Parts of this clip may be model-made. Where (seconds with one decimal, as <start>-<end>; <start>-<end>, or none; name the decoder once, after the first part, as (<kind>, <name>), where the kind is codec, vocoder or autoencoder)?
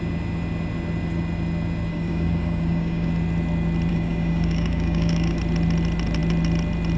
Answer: 1.9-3.1 (codec, DAC); 3.9-5.4